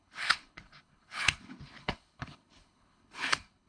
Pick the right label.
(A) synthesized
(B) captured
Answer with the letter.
A